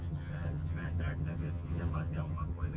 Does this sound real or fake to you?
fake